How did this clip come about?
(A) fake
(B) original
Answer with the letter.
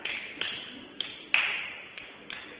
B